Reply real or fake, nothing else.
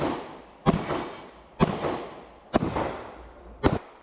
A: real